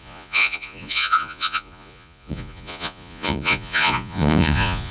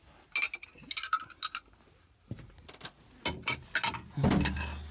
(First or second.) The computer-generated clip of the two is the first